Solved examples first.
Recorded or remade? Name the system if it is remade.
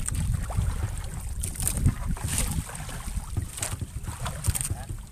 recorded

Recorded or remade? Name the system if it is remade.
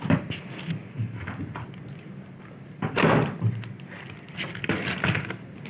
remade, vocoder, BigVGAN v2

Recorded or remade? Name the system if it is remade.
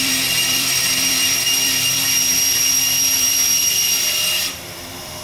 remade, vocoder, BigVGAN v2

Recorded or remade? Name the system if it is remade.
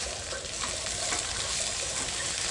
remade, vocoder, BigVGAN v2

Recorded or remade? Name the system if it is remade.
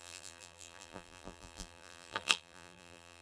remade, vocoder, BigVGAN v2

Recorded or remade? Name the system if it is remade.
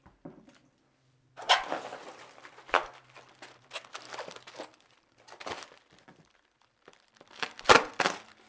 remade, vocoder, BigVGAN v2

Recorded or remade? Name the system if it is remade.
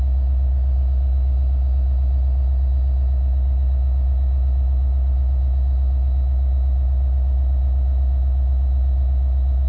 recorded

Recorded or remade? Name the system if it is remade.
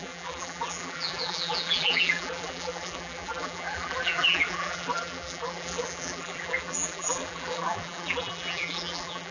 remade, vocoder, BigVGAN v2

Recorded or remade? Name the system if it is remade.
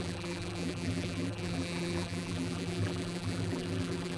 remade, vocoder, BigVGAN v2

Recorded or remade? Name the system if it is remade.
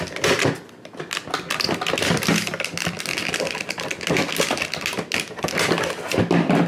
recorded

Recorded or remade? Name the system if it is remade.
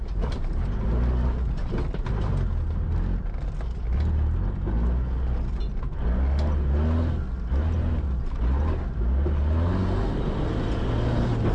recorded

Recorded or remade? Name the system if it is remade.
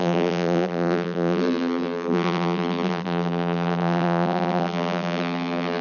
remade, vocoder, BigVGAN v2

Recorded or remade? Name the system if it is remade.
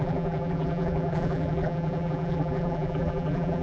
remade, vocoder, BigVGAN v2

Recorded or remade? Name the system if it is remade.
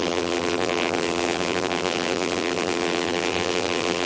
remade, vocoder, BigVGAN v2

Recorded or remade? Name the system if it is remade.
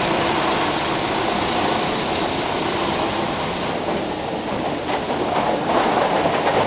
recorded